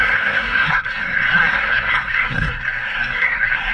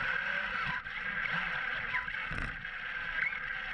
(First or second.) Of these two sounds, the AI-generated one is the first